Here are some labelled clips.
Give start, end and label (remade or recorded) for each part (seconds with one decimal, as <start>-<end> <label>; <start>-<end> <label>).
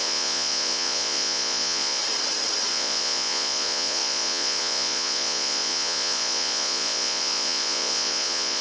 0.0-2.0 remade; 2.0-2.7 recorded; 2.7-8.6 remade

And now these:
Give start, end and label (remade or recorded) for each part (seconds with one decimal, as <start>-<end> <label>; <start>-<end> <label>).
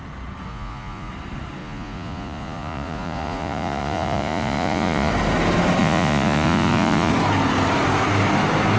0.0-0.5 recorded; 0.5-1.1 remade; 1.1-1.6 recorded; 1.6-5.1 remade; 5.1-5.8 recorded; 5.8-7.1 remade; 7.1-8.8 recorded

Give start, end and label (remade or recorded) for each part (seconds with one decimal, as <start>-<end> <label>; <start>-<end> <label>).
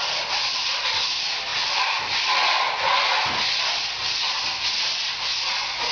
0.0-5.9 recorded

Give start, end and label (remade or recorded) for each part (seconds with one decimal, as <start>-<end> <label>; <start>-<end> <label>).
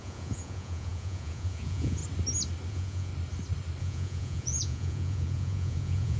0.0-2.0 remade; 2.0-2.7 recorded; 2.7-3.1 remade; 3.1-3.8 recorded; 3.8-6.2 remade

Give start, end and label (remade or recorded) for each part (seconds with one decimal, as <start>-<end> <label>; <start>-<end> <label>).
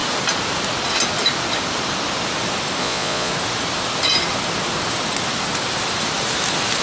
0.0-2.8 recorded; 2.8-3.3 remade; 3.3-6.8 recorded